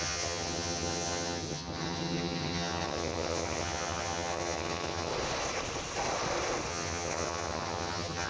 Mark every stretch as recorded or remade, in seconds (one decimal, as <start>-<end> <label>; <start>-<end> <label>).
0.0-5.1 remade; 5.1-6.7 recorded; 6.7-8.3 remade